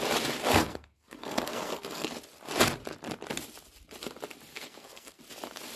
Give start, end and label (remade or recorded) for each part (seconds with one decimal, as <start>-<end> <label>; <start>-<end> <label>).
0.0-0.5 recorded; 0.5-2.1 remade; 2.1-4.5 recorded; 4.5-5.2 remade; 5.2-5.8 recorded

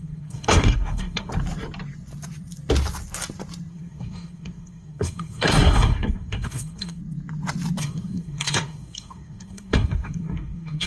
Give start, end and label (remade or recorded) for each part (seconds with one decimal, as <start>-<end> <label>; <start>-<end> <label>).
0.0-1.3 remade; 1.3-3.7 recorded; 3.7-7.0 remade; 7.0-7.8 recorded; 7.8-10.9 remade

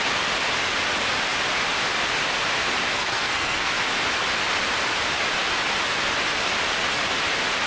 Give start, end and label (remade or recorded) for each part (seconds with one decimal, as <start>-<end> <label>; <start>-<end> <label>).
0.0-2.9 recorded; 2.9-3.7 remade; 3.7-7.7 recorded